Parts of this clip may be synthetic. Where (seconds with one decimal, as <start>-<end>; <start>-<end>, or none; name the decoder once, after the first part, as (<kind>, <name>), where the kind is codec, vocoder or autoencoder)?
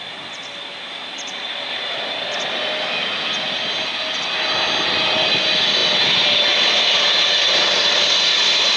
none